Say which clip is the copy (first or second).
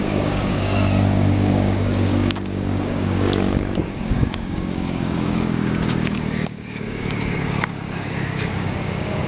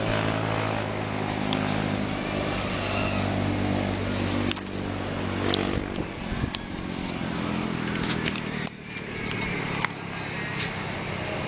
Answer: first